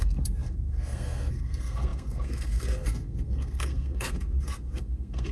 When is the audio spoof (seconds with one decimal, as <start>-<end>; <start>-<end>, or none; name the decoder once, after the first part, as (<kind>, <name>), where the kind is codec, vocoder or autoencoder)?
0.0-5.3 (codec, SNAC)